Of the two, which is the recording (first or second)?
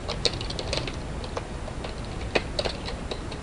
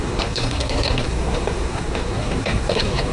first